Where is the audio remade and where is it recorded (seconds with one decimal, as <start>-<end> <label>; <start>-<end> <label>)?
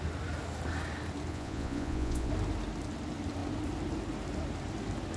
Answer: 0.0-1.3 recorded; 1.3-2.3 remade; 2.3-5.2 recorded